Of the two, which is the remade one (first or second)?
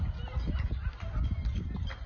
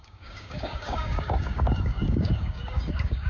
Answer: second